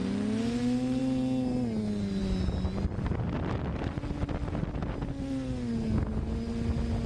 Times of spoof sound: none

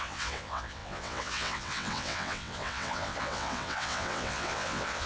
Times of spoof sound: 0.0-5.1 (vocoder, WaveNeXt)

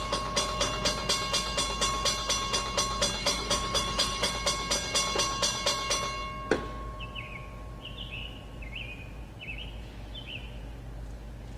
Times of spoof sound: 3.2-4.3 (autoencoder, DAC-VAE)

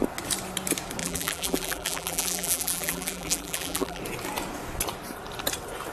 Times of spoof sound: 1.0-4.0 (vocoder, BigVGAN v2)

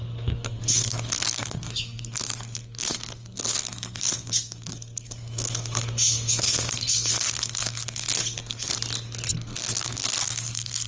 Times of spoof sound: 0.0-8.7 (codec, SNAC); 9.3-10.9